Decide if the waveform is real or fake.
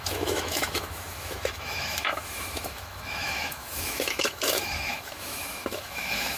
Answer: fake